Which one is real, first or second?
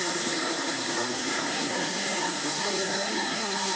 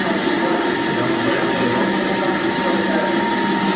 second